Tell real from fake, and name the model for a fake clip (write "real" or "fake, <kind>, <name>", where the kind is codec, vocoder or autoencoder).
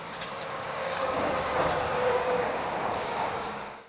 fake, codec, DAC